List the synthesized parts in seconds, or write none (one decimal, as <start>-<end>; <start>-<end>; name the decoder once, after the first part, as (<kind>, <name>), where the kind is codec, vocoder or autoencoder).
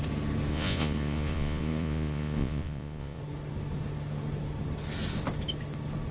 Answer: 0.5-3.2 (vocoder, Vocos)